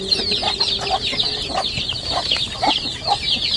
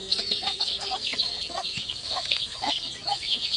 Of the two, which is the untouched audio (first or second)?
first